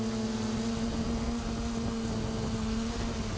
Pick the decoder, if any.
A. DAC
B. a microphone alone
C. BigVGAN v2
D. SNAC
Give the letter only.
B